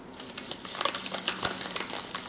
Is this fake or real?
real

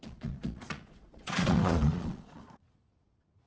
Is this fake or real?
fake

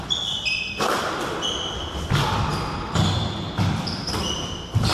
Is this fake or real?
real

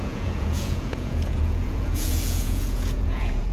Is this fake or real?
fake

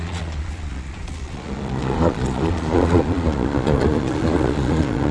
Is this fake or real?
fake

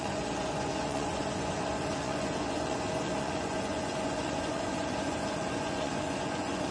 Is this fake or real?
fake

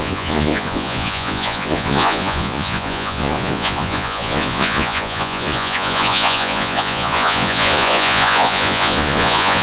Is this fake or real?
fake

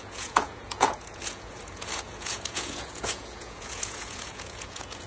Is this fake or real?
fake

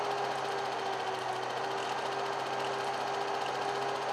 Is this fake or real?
real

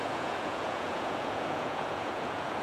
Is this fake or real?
fake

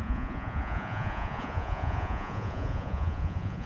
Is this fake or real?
fake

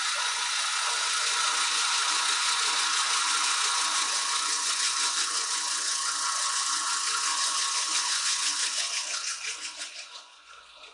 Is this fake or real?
fake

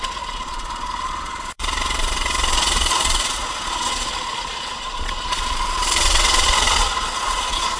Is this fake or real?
fake